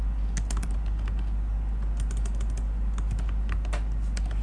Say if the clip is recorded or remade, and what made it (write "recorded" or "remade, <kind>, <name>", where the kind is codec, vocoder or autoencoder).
recorded